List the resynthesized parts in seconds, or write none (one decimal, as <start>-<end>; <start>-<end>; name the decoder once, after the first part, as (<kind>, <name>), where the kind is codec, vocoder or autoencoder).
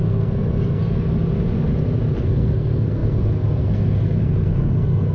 0.0-0.8 (codec, SNAC); 2.2-5.1